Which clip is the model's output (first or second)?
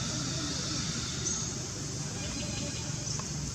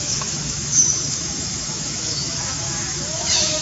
second